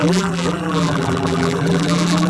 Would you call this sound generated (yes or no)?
yes